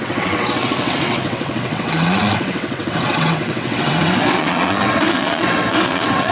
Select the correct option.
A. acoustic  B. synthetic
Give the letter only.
B